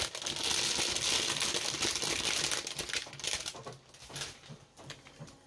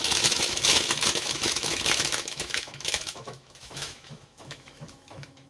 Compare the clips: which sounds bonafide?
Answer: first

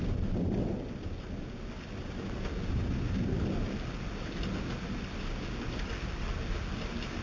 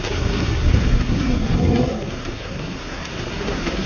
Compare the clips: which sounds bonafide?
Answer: first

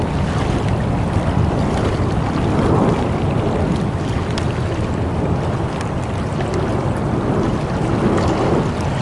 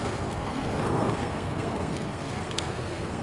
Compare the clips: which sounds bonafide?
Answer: first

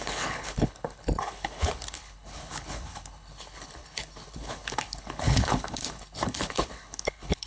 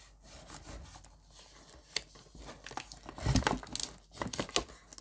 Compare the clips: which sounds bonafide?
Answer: second